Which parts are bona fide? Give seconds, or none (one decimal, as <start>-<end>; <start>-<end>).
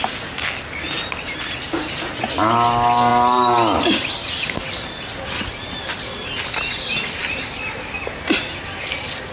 0.0-9.3